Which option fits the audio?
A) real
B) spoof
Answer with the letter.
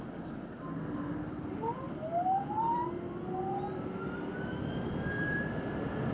A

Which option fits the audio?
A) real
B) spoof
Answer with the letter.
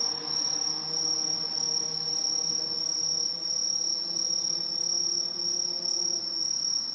A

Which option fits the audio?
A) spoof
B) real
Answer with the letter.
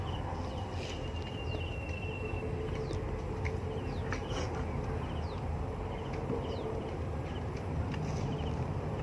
B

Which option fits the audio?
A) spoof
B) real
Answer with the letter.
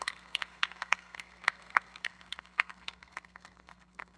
A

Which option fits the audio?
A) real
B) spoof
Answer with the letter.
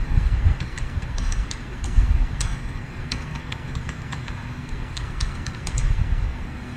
B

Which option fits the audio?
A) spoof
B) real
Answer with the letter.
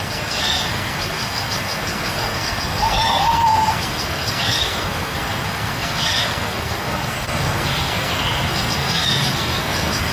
A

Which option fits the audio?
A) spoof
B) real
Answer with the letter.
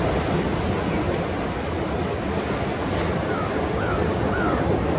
B